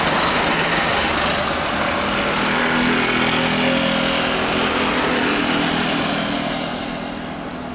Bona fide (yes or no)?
yes